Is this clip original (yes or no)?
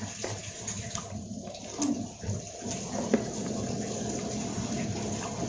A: yes